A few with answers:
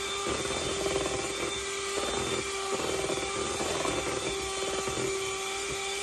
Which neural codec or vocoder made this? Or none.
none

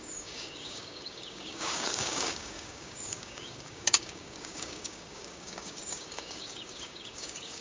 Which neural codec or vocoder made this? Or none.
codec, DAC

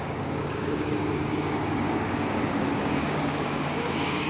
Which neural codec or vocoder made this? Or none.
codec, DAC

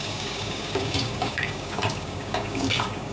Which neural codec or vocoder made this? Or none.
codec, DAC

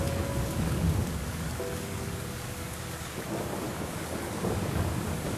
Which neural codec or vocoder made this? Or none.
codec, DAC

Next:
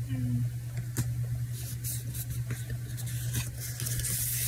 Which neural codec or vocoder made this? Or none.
none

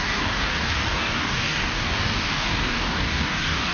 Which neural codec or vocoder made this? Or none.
codec, DAC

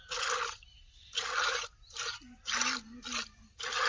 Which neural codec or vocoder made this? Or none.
none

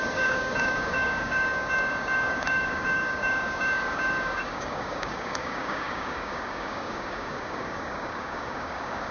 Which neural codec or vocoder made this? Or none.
codec, DAC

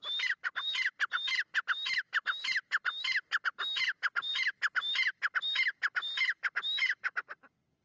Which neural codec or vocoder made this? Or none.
none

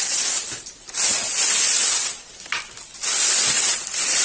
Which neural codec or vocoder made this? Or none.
none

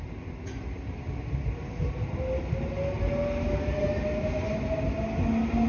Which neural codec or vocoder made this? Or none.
none